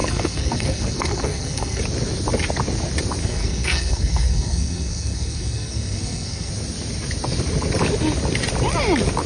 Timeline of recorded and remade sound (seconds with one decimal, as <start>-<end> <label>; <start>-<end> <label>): 0.0-1.8 remade; 1.8-3.2 recorded; 3.2-6.5 remade; 6.5-9.3 recorded